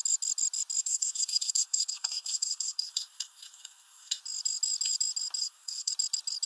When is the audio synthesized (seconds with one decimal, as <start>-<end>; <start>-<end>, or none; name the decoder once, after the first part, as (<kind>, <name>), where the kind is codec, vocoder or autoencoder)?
0.8-4.2 (codec, SNAC); 5.4-5.9